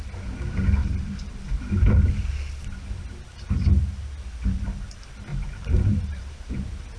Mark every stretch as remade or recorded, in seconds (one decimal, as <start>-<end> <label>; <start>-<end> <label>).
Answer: 0.0-0.8 recorded; 0.8-1.4 remade; 1.4-5.3 recorded; 5.3-6.5 remade; 6.5-7.0 recorded